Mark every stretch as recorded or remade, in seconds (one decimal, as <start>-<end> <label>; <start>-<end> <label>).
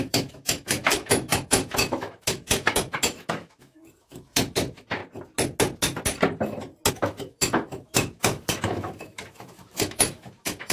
0.0-5.0 remade; 5.0-6.9 recorded; 6.9-10.7 remade